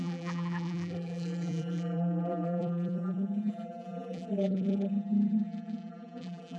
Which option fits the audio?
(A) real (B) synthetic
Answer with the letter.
B